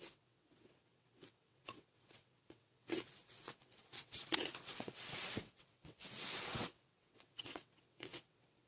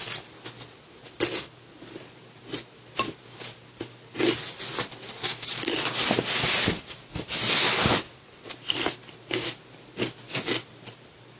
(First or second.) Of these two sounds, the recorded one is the second